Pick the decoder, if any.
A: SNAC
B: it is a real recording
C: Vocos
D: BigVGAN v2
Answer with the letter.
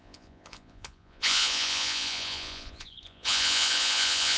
C